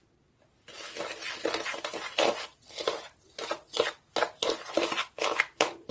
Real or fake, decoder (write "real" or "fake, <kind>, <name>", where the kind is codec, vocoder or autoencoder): real